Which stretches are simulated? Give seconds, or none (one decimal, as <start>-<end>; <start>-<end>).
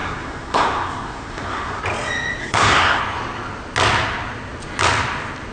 0.0-1.8; 2.4-3.0